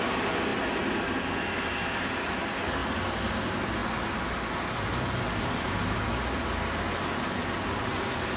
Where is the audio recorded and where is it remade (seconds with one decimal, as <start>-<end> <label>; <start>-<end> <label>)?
0.0-8.4 recorded